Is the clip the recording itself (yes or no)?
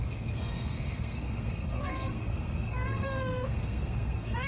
no